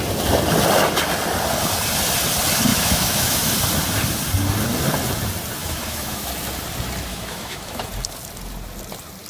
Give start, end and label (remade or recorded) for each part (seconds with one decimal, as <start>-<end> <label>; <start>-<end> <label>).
0.0-2.7 recorded; 2.7-3.5 remade; 3.5-5.6 recorded; 5.6-6.3 remade; 6.3-7.1 recorded; 7.1-7.9 remade; 7.9-9.3 recorded